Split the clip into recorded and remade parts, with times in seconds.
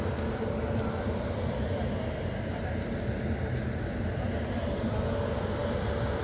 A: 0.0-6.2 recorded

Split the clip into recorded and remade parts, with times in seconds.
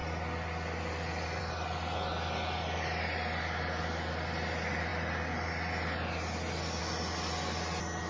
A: 0.0-8.1 recorded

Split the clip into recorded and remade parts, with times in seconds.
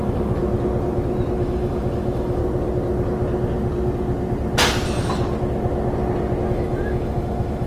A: 0.0-0.4 remade; 0.4-1.4 recorded; 1.4-2.4 remade; 2.4-6.5 recorded; 6.5-7.7 remade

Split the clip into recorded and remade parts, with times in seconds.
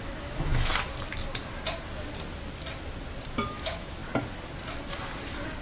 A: 0.0-0.7 remade; 0.7-3.5 recorded; 3.5-4.0 remade; 4.0-5.6 recorded